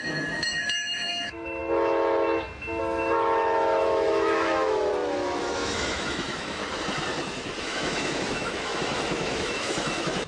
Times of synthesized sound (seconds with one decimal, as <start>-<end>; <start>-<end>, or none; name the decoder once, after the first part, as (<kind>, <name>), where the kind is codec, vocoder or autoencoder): 0.0-1.6 (autoencoder, DAC-VAE); 2.8-4.9; 5.4-6.6; 7.6-10.3